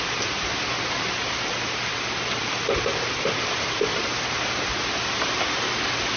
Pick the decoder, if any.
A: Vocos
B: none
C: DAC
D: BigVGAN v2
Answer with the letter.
B